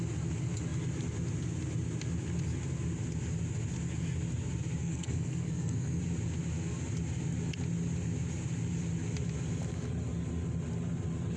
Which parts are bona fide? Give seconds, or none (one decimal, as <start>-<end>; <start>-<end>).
0.0-4.8; 6.0-11.4